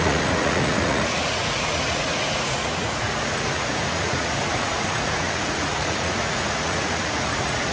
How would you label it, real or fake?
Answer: fake